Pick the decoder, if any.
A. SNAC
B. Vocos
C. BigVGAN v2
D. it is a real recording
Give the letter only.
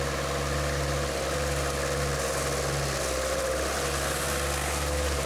D